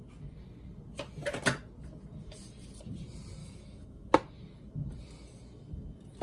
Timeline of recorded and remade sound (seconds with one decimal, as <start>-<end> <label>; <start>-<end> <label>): 0.0-3.4 recorded; 3.4-4.1 remade; 4.1-6.2 recorded